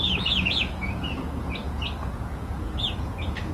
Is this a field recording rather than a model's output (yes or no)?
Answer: no